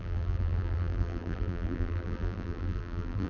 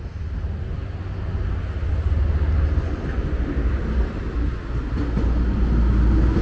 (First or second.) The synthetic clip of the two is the first